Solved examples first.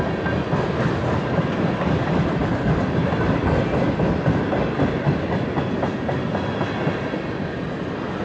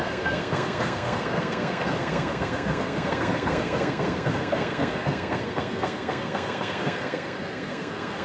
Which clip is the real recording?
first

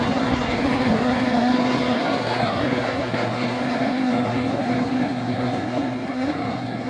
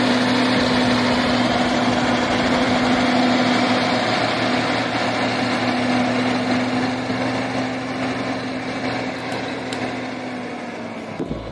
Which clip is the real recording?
second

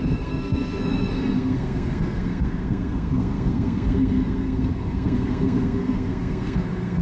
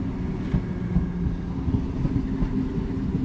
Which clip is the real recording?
second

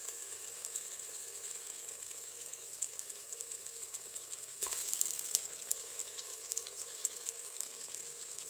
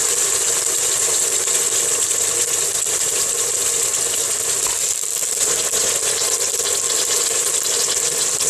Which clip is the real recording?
second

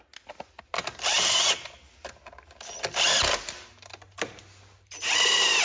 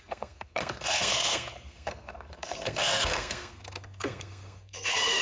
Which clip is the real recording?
first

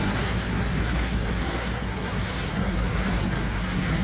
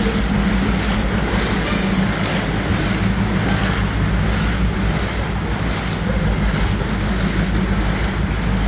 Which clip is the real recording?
second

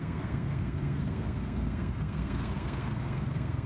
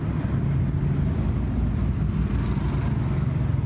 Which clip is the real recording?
second